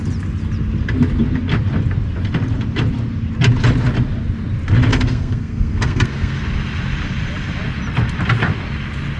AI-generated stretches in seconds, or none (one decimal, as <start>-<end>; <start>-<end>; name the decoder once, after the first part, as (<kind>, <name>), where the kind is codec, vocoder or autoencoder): 4.9-6.4 (codec, SNAC)